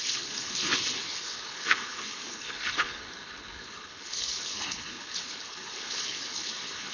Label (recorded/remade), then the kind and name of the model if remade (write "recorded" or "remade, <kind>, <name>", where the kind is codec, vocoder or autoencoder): remade, codec, HILCodec